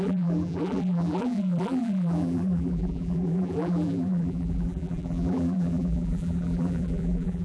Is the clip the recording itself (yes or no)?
no